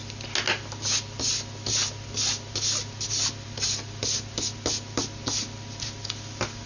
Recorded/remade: recorded